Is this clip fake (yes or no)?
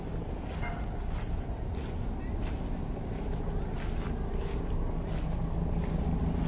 no